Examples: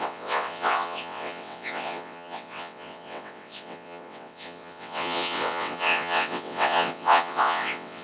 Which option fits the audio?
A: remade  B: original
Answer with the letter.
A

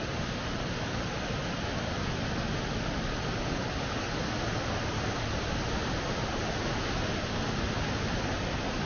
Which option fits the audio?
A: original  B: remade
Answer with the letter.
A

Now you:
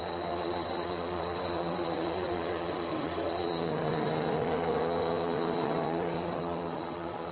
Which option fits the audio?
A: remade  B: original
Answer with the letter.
A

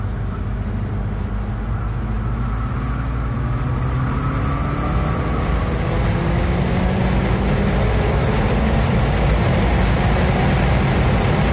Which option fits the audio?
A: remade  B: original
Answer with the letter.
B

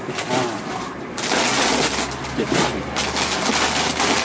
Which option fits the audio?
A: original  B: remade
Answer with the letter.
A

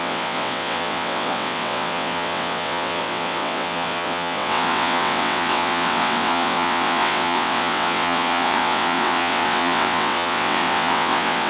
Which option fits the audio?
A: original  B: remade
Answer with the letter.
B